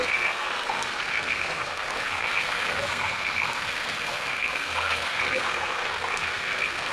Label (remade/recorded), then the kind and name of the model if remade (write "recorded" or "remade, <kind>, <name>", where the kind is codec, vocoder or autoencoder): remade, codec, SNAC